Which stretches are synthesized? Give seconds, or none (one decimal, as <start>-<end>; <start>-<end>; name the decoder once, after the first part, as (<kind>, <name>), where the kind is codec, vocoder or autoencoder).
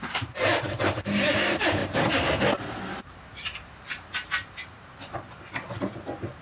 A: 0.0-1.8 (vocoder, BigVGAN v2); 3.0-6.4